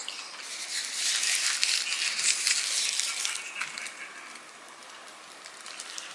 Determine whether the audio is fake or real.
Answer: real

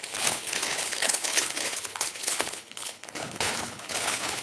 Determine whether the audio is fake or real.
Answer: fake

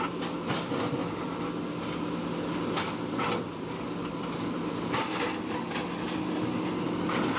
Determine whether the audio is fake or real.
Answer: real